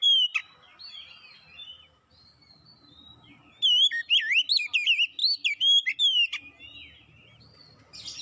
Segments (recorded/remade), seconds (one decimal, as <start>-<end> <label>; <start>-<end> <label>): 0.0-8.2 recorded